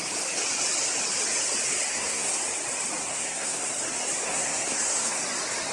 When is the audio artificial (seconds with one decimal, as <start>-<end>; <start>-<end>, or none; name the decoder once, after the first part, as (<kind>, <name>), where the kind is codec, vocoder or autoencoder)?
1.9-2.4 (codec, SNAC); 3.0-3.7; 4.2-5.2